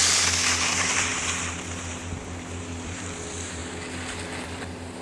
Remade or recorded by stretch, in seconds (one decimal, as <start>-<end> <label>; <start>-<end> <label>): 0.0-0.7 recorded; 0.7-1.1 remade; 1.1-2.6 recorded; 2.6-3.6 remade; 3.6-4.4 recorded; 4.4-5.0 remade